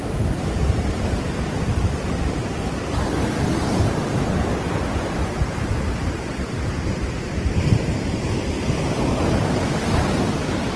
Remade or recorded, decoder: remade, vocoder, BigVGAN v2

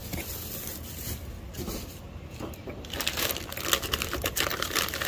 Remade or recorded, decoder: recorded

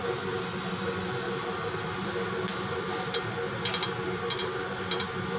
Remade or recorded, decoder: recorded